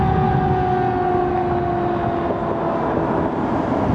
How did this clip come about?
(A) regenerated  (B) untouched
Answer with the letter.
B